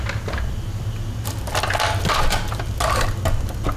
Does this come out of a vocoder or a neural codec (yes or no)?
no